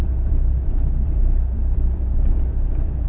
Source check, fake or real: fake